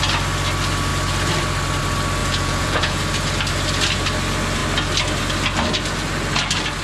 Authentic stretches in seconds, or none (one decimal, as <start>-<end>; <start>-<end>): 0.0-2.2; 3.0-6.8